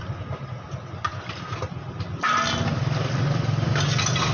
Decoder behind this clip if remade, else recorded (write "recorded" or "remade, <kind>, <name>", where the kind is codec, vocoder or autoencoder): recorded